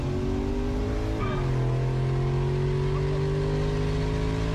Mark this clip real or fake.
real